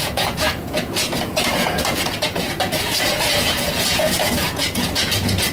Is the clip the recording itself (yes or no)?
no